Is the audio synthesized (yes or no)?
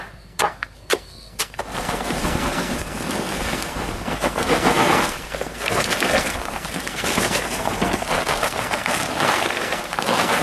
yes